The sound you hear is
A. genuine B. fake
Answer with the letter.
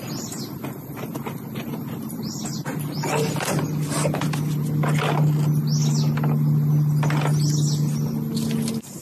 A